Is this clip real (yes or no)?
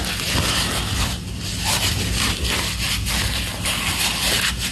yes